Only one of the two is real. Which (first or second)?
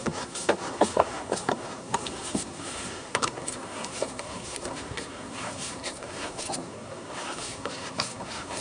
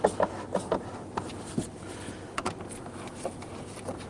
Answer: second